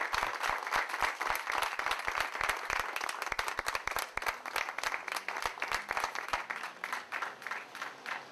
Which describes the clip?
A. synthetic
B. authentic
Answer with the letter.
B